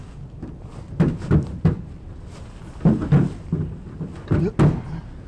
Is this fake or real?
real